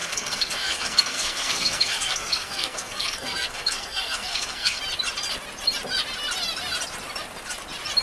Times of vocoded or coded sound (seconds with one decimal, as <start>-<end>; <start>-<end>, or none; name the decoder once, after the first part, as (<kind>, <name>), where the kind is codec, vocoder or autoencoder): 0.0-4.8 (codec, SNAC)